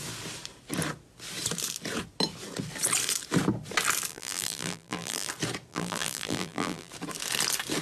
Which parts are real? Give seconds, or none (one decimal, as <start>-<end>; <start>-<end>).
0.0-4.1; 5.3-5.7; 6.9-7.8